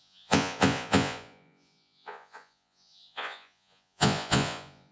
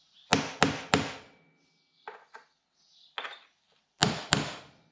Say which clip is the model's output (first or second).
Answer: first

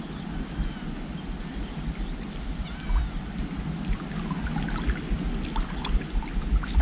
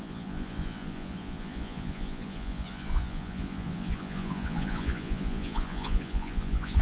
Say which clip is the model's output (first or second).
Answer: second